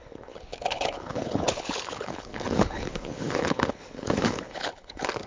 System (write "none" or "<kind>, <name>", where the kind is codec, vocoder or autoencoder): codec, HILCodec